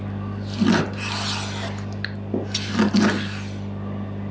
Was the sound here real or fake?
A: real